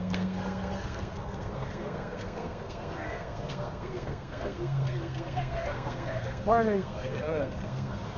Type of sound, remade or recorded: remade